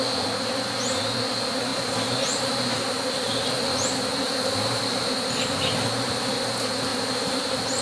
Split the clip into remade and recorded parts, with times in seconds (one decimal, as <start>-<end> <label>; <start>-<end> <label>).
0.0-1.7 recorded; 1.7-3.0 remade; 3.0-6.9 recorded; 6.9-7.8 remade